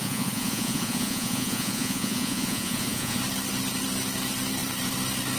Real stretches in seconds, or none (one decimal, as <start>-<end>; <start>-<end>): 3.2-5.4